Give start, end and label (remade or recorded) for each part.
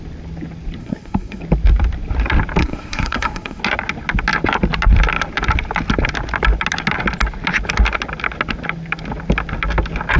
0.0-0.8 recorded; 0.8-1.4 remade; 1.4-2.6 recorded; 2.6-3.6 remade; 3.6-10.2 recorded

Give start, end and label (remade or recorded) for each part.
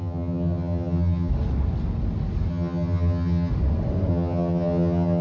0.0-1.3 remade; 1.3-2.5 recorded; 2.5-3.5 remade; 3.5-4.1 recorded; 4.1-5.2 remade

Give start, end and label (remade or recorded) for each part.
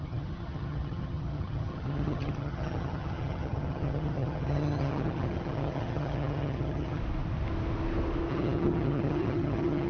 0.0-7.0 remade; 7.0-8.3 recorded; 8.3-9.9 remade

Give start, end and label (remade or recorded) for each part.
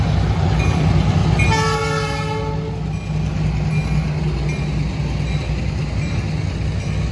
0.0-7.1 recorded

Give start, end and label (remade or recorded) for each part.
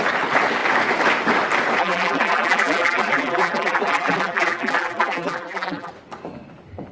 0.0-1.8 recorded; 1.8-5.9 remade; 5.9-6.9 recorded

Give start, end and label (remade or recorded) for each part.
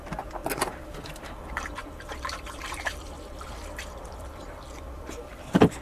0.0-0.4 remade; 0.4-1.4 recorded; 1.4-5.8 remade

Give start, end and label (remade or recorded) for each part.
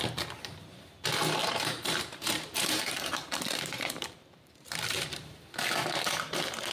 0.0-1.4 recorded; 1.4-5.4 remade; 5.4-6.7 recorded